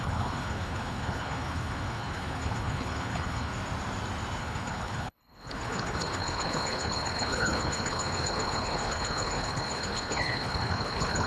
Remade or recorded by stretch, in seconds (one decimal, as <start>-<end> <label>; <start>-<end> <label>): 0.0-3.5 remade; 3.5-4.4 recorded; 4.4-11.3 remade

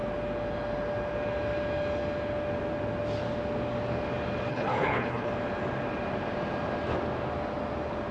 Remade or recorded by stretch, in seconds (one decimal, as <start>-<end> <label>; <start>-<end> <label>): 0.0-4.5 recorded; 4.5-5.3 remade; 5.3-8.1 recorded